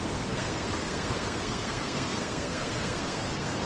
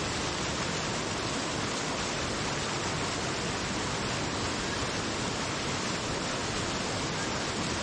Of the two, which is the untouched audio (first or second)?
second